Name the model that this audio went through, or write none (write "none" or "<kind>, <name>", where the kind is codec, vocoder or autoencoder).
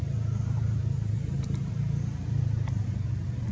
none